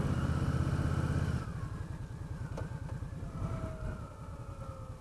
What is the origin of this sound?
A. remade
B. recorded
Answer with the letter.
B